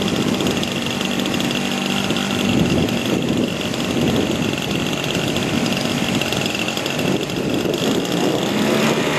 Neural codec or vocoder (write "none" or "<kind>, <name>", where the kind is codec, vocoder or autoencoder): none